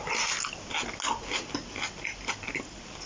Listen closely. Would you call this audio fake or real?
real